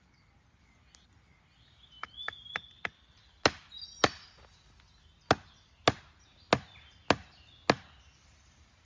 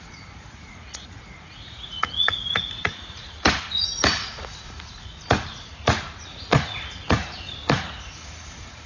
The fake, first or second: second